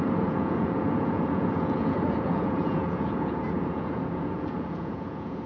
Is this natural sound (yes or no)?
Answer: no